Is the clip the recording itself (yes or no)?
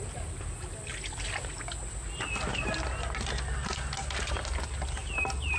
yes